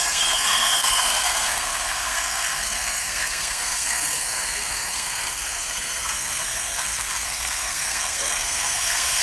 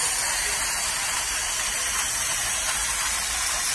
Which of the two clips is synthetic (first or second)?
first